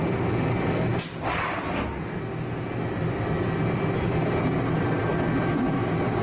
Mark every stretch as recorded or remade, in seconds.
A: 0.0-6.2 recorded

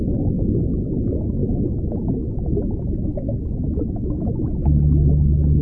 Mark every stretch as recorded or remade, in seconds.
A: 0.0-5.6 remade

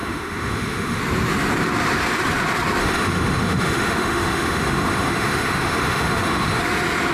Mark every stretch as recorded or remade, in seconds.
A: 0.0-1.0 remade; 1.0-2.8 recorded; 2.8-6.6 remade; 6.6-7.1 recorded

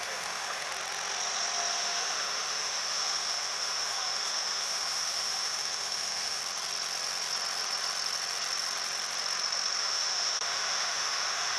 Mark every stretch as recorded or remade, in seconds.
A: 0.0-0.7 remade; 0.7-1.7 recorded; 1.7-6.4 remade; 6.4-9.8 recorded; 9.8-11.6 remade